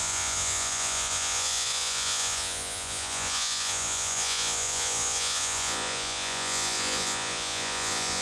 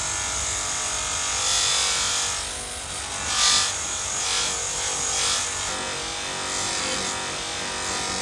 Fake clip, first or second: first